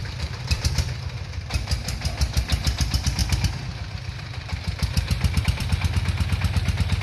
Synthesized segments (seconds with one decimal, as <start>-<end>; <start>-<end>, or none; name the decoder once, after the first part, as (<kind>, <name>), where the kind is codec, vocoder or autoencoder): 0.0-3.2 (vocoder, BigVGAN v2); 5.4-7.0